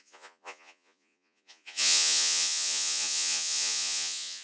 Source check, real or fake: fake